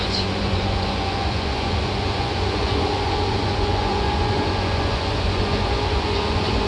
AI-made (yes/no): yes